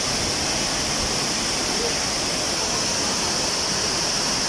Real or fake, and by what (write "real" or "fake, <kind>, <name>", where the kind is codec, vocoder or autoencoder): real